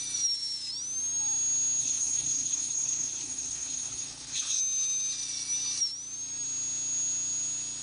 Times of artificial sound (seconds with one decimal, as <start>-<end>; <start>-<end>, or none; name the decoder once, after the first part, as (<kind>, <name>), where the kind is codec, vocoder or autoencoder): 1.8-4.6 (codec, HILCodec)